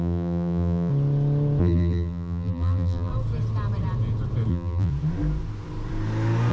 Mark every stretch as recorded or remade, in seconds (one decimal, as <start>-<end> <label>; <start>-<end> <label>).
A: 0.0-0.9 remade; 0.9-1.6 recorded; 1.6-3.1 remade; 3.1-4.5 recorded; 4.5-4.9 remade; 4.9-6.5 recorded